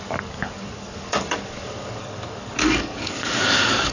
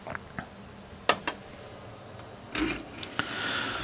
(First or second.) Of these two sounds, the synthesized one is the first